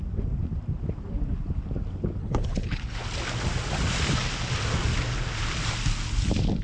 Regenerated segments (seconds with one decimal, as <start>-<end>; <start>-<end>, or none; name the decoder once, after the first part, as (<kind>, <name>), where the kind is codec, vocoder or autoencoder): 2.2-3.0 (codec, HILCodec)

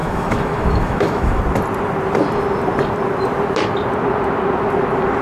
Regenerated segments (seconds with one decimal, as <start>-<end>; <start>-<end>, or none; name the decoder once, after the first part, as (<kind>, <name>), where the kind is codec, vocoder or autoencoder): 0.0-1.4 (autoencoder, DAC-VAE)

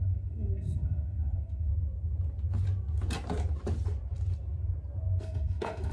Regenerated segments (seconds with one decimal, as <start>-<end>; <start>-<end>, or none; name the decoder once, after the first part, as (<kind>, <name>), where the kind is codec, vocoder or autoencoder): 0.0-1.7 (codec, SNAC); 5.2-5.9

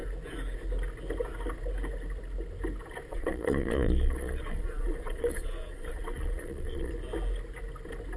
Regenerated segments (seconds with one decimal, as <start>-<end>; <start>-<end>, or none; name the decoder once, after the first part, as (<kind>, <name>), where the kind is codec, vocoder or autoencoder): 3.1-6.9 (vocoder, Vocos)